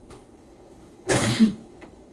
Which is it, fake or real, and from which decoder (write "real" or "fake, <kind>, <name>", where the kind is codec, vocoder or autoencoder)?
fake, codec, HILCodec